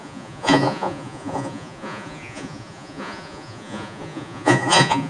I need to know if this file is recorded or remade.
remade